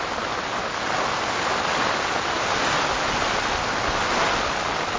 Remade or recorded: recorded